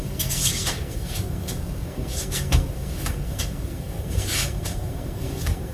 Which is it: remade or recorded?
remade